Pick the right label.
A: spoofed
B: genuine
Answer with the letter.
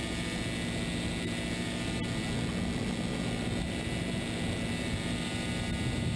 B